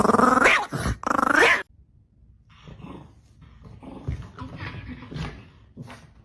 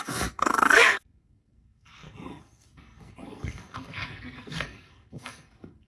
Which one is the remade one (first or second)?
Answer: second